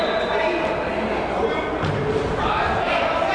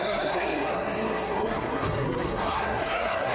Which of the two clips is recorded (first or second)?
first